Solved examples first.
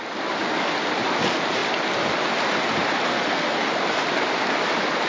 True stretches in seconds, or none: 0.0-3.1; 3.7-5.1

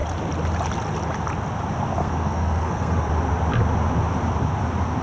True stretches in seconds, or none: 0.0-2.0; 3.1-5.0

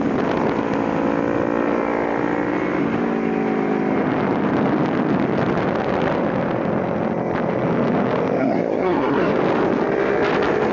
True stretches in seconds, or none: 0.0-8.4; 9.3-10.7

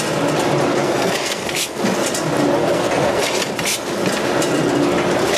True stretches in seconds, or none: 0.0-0.7; 1.8-2.6; 3.2-5.4

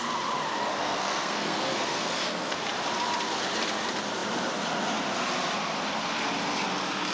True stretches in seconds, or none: 0.0-0.8; 2.6-7.1